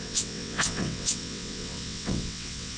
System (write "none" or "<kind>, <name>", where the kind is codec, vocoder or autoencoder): vocoder, WaveNeXt